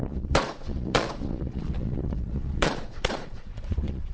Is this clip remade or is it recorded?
remade